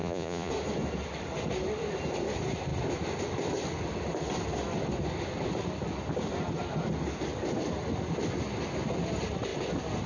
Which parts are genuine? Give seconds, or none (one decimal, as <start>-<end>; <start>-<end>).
0.5-10.1